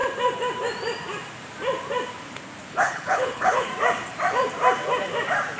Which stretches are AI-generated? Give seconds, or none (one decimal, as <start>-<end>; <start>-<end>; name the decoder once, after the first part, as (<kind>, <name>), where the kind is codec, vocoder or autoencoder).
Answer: 2.7-3.7 (codec, HILCodec)